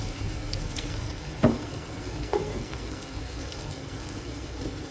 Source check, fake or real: fake